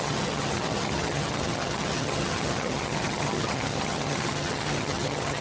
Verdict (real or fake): fake